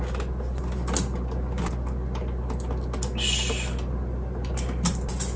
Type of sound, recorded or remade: recorded